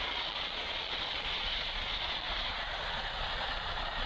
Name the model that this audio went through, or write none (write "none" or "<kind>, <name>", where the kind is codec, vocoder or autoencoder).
vocoder, Vocos